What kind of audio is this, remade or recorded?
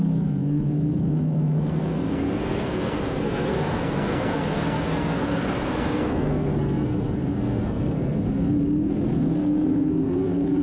remade